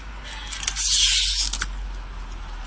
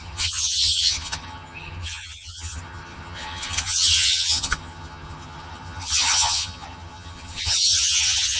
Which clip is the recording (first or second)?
first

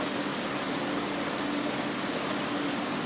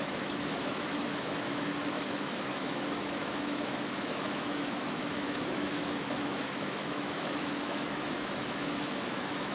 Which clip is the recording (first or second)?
first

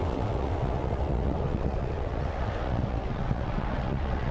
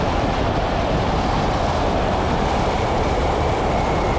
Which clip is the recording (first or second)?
second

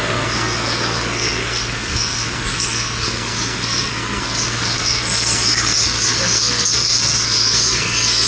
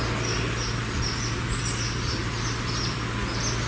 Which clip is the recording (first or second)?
second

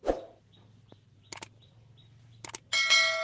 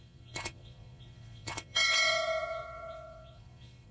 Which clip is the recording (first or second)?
first